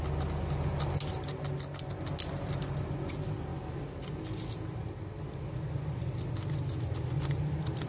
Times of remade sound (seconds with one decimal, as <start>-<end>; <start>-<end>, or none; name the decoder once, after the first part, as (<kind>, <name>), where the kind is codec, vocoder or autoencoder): none

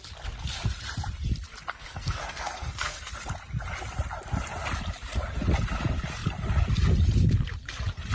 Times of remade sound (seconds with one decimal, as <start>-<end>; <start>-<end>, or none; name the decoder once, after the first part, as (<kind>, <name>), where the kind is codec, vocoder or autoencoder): 1.7-3.1 (codec, SNAC)

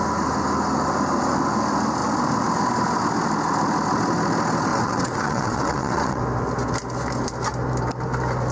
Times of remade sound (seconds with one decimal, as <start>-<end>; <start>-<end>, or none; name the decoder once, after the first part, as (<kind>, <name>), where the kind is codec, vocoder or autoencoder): 4.7-6.2 (vocoder, WaveNeXt)

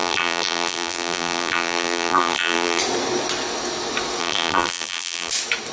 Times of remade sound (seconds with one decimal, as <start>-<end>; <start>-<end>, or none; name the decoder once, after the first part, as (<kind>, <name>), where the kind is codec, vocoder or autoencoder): 0.0-2.8 (vocoder, BigVGAN v2); 4.2-5.3

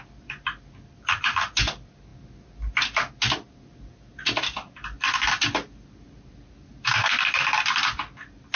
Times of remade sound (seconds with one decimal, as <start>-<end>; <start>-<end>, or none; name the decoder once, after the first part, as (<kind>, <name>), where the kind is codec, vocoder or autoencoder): none

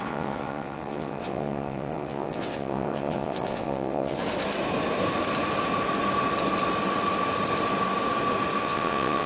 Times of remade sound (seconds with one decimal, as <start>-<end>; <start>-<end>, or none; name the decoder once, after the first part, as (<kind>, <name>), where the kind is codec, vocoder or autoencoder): 0.0-4.2 (vocoder, WaveNeXt); 8.6-9.3

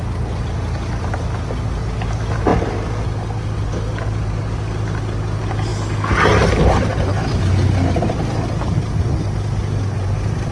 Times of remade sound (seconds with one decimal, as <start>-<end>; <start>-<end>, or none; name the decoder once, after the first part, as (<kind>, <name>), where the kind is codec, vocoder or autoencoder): none

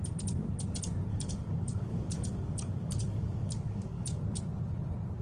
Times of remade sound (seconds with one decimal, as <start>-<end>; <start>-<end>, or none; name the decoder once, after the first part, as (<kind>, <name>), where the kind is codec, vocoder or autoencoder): 1.1-4.2 (codec, DAC)